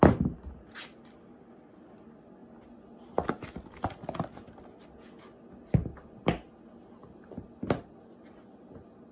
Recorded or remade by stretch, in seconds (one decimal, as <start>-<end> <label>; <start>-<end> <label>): 0.0-9.1 recorded